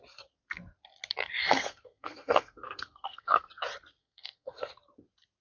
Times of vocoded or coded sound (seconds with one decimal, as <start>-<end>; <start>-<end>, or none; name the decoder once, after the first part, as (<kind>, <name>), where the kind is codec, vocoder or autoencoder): 1.4-3.5 (codec, SNAC); 4.0-4.7